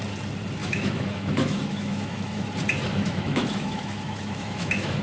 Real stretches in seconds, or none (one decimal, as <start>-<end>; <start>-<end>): 0.0-0.6; 2.5-2.9